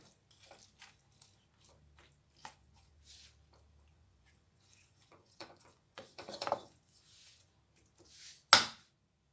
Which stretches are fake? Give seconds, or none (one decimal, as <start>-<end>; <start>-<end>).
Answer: 2.4-3.0; 3.9-7.5